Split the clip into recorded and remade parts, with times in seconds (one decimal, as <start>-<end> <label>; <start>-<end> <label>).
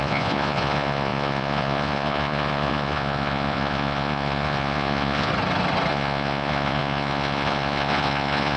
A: 0.0-5.3 remade; 5.3-5.9 recorded; 5.9-8.6 remade